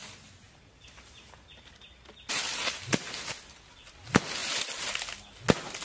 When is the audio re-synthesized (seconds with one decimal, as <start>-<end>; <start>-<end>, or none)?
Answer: none